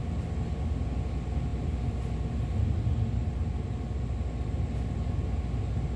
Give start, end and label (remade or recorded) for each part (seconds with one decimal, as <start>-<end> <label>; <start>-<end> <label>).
0.0-6.0 recorded